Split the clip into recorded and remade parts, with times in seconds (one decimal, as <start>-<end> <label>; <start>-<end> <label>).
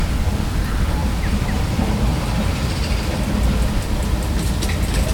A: 0.0-5.1 recorded